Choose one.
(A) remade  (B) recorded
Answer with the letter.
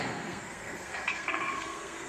A